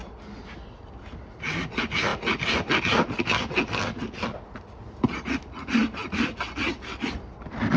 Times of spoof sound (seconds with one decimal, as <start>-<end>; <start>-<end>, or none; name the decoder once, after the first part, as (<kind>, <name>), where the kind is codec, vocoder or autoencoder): none